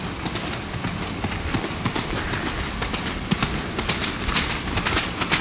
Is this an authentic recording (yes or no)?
yes